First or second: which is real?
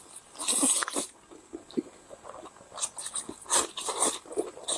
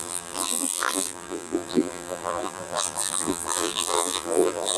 first